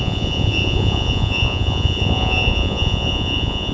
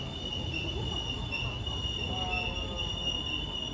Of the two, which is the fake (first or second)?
first